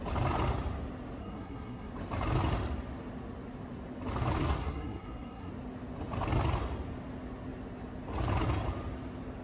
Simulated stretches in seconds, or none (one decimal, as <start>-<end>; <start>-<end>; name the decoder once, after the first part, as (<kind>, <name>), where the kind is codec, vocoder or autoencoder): 1.2-1.9 (codec, SNAC); 4.4-5.5